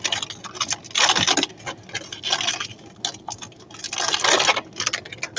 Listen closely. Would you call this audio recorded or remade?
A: recorded